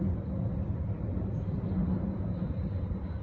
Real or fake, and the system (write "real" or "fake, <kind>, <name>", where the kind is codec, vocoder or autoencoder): real